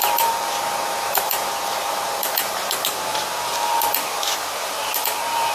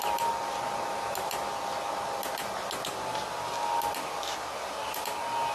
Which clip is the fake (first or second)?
first